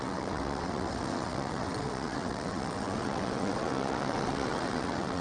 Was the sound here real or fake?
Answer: fake